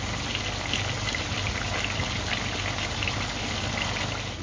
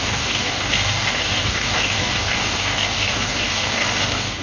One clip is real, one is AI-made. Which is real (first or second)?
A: first